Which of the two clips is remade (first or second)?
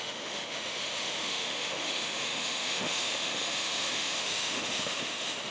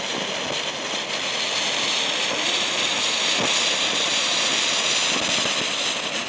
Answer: first